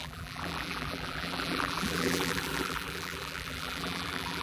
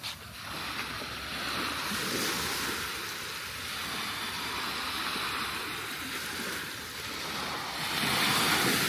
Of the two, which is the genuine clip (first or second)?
second